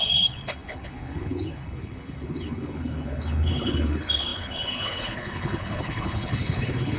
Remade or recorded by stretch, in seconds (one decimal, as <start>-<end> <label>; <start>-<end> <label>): 0.0-7.0 remade